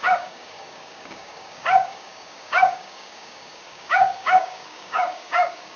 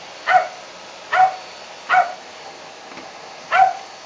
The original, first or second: second